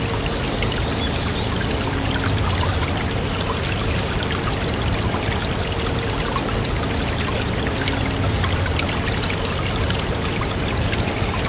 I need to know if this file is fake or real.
real